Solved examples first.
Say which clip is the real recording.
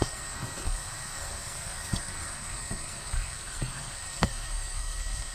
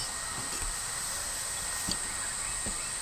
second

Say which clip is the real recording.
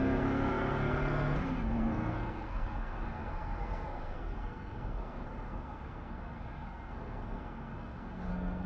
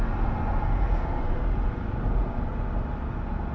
second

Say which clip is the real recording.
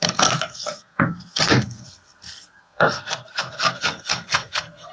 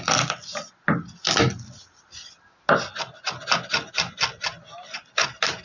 second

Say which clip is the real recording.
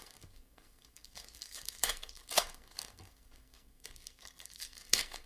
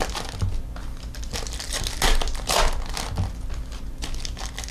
second